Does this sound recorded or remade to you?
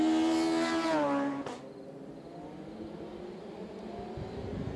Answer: recorded